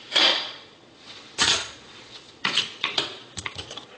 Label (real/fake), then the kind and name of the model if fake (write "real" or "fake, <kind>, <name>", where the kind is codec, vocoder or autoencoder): fake, vocoder, Vocos